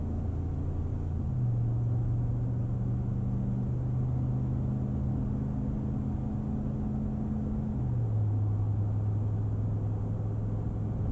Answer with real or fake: real